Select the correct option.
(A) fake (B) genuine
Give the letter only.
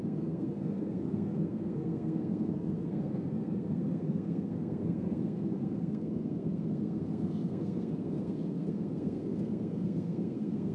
A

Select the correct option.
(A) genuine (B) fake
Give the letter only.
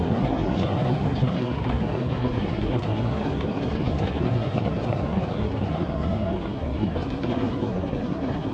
B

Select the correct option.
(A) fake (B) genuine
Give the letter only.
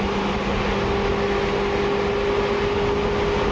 B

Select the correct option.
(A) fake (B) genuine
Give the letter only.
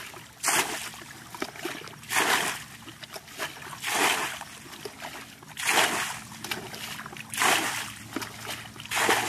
B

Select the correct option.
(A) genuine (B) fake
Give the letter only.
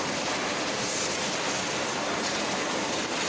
A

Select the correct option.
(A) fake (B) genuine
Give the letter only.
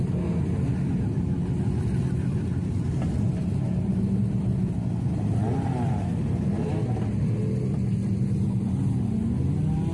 B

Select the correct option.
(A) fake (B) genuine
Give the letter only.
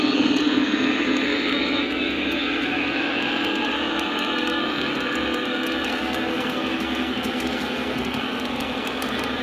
A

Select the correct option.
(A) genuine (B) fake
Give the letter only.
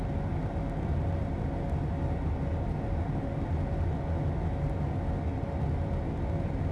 A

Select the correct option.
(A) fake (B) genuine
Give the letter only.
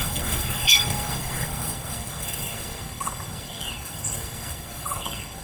A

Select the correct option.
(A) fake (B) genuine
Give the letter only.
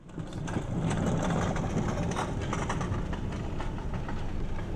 B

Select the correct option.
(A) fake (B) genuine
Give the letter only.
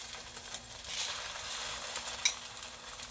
B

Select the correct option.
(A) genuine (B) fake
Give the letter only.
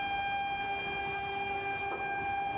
A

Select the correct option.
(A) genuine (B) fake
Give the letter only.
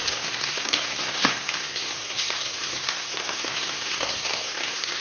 B